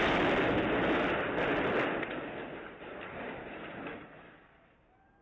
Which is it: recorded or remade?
remade